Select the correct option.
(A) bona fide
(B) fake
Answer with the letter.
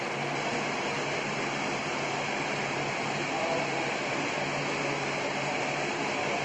A